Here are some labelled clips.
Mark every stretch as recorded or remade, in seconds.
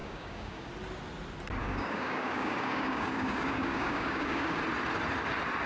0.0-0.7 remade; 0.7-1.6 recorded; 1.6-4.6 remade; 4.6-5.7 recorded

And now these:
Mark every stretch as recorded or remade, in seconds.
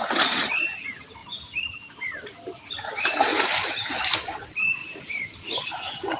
0.0-3.3 recorded; 3.3-4.0 remade; 4.0-4.8 recorded; 4.8-5.6 remade; 5.6-6.2 recorded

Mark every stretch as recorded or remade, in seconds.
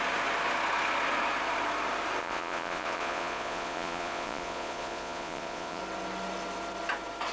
0.0-2.2 recorded; 2.2-5.8 remade; 5.8-7.3 recorded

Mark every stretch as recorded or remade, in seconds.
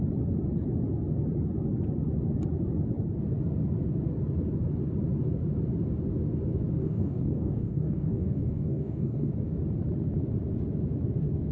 0.0-6.8 recorded; 6.8-9.3 remade; 9.3-11.5 recorded